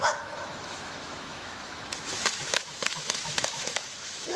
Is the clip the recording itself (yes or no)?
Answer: no